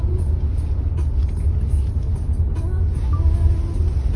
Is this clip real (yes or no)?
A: yes